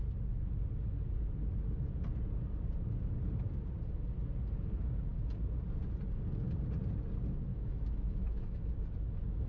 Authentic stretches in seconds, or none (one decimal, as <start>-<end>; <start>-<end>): 0.0-7.5; 8.7-9.5